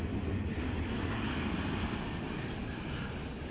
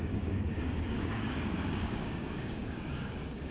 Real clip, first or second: first